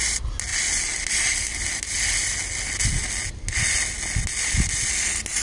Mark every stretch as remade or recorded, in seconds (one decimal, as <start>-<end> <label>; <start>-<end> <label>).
0.0-5.4 recorded